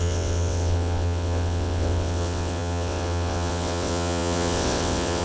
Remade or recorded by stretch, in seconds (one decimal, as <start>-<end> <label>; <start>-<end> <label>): 0.0-5.2 remade